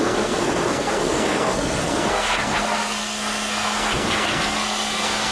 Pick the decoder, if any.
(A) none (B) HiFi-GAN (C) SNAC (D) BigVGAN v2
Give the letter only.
C